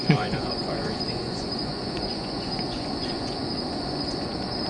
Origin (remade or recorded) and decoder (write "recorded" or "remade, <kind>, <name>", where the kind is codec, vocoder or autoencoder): remade, vocoder, Vocos